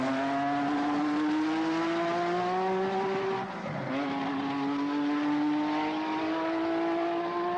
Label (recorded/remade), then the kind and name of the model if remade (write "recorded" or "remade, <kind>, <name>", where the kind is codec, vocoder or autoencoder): recorded